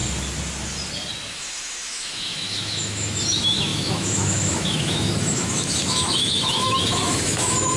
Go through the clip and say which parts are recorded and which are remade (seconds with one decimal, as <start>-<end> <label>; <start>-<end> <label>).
0.0-1.3 recorded; 1.3-7.8 remade